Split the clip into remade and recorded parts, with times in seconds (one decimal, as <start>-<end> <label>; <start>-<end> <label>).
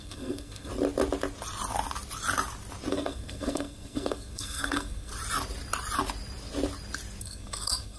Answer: 0.0-0.7 remade; 0.7-2.9 recorded; 2.9-5.1 remade; 5.1-7.2 recorded; 7.2-8.0 remade